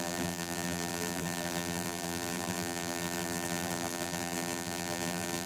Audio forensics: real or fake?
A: fake